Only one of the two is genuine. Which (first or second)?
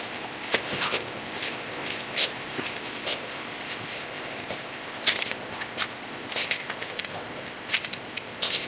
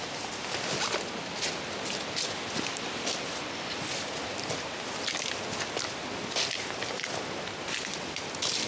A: second